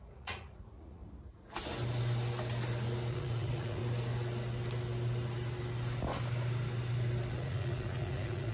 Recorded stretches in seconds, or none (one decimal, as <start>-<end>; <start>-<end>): 1.0-3.1; 3.8-7.3